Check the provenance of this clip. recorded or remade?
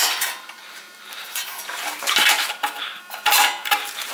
remade